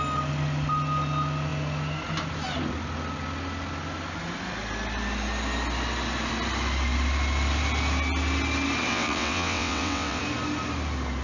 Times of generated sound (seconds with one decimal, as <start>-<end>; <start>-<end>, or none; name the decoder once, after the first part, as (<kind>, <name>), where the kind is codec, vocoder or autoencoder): 8.9-10.2 (vocoder, WaveNeXt)